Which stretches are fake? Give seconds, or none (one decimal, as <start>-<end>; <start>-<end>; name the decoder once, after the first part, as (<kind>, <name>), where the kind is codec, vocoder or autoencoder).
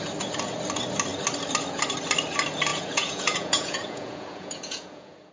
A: 2.7-5.3 (vocoder, Vocos)